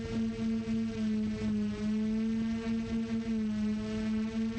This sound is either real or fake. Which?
real